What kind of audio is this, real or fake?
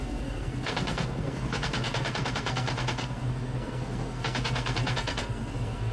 fake